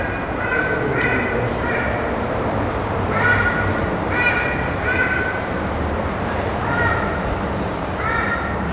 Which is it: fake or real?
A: fake